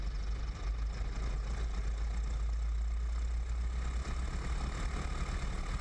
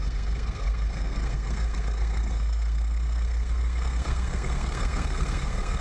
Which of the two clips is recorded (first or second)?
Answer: first